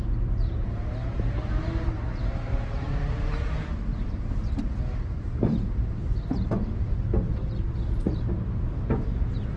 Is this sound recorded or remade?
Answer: remade